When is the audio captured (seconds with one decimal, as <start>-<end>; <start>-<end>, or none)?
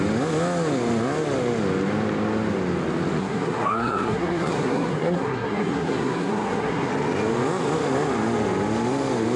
0.0-3.2; 6.9-9.4